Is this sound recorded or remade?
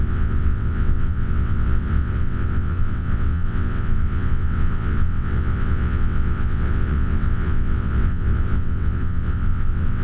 remade